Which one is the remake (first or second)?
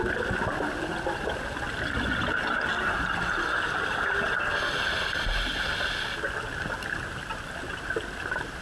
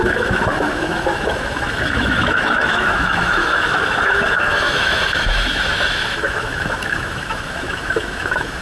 second